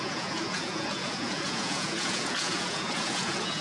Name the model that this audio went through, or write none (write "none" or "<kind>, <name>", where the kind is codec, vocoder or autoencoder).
vocoder, Vocos